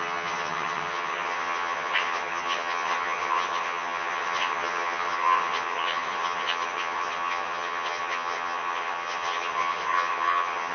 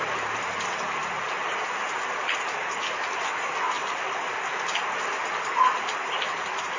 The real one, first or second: second